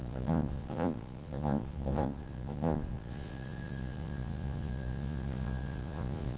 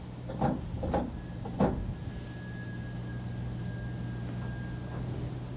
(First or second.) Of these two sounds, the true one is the second